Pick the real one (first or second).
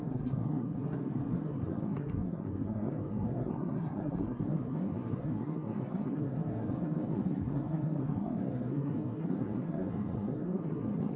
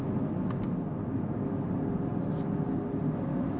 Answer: second